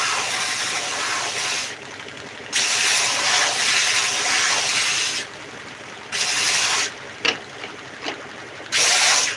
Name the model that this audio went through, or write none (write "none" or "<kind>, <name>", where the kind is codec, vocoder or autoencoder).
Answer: none